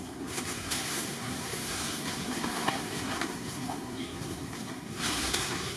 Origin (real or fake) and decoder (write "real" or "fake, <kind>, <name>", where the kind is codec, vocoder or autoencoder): fake, codec, SNAC